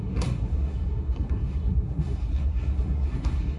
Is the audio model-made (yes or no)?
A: yes